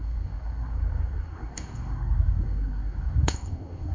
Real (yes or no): no